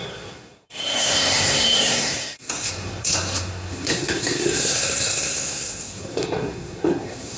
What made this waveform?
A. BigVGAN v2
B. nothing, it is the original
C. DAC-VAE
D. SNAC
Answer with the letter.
D